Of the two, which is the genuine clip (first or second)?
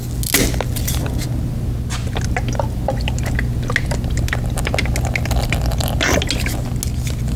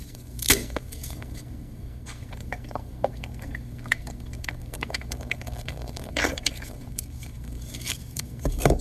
first